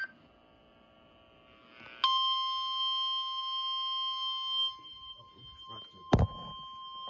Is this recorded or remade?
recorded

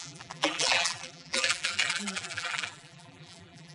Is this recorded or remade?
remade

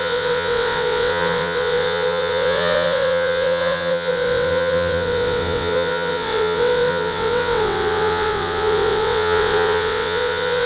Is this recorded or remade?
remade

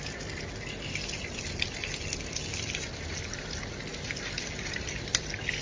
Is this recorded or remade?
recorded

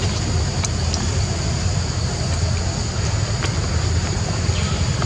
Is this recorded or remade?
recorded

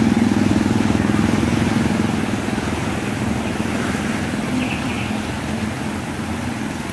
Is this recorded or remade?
recorded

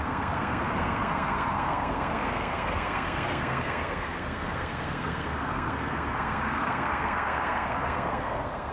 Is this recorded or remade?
remade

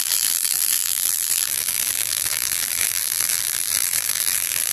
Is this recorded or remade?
remade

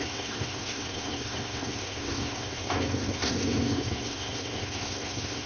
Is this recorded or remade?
remade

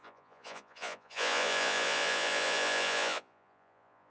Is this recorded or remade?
remade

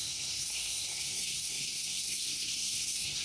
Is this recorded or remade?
remade